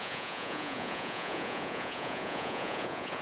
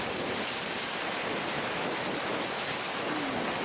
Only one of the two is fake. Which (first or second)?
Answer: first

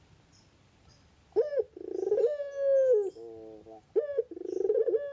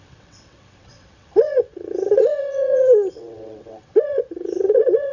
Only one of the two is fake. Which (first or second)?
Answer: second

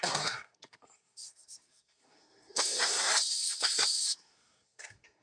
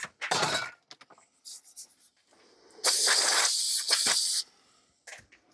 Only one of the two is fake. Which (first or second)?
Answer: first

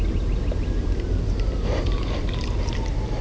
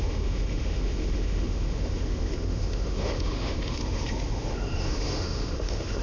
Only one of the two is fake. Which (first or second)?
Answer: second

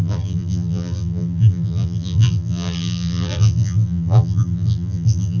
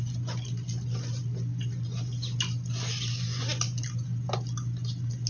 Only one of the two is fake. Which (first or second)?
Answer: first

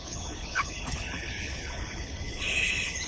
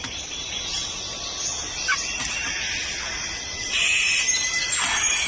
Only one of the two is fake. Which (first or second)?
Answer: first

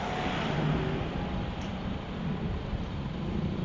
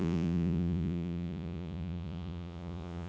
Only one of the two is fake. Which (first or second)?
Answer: second